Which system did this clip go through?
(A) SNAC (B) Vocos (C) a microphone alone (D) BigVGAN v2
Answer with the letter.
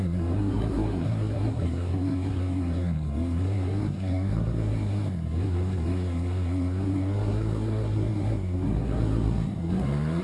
A